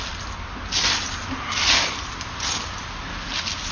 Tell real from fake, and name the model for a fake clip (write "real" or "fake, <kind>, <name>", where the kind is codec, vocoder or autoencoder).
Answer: real